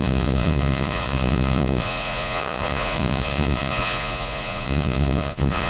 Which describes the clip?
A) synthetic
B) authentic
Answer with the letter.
A